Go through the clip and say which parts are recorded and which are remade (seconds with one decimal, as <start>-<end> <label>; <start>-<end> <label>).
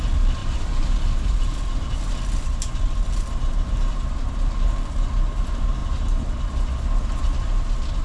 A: 0.0-0.4 recorded; 0.4-1.4 remade; 1.4-8.0 recorded